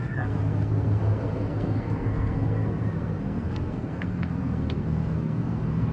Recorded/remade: remade